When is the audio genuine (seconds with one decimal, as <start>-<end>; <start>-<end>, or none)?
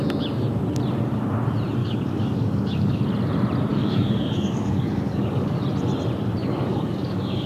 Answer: 0.0-1.8; 3.0-3.7; 5.6-6.4